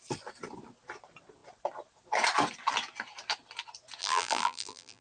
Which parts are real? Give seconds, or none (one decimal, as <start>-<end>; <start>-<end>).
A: 0.0-4.0